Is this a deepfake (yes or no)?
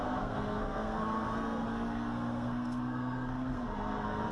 yes